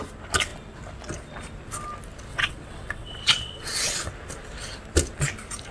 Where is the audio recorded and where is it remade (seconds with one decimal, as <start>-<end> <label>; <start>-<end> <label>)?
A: 0.0-2.3 recorded; 2.3-4.1 remade; 4.1-5.7 recorded